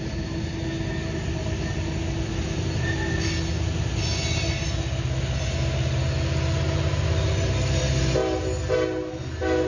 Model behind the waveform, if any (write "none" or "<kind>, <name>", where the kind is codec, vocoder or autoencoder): none